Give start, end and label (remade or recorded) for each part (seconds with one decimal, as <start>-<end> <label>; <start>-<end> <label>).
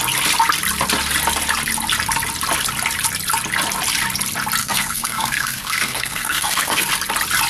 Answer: 0.0-4.6 recorded; 4.6-6.9 remade; 6.9-7.5 recorded